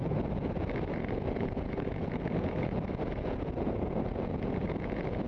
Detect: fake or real fake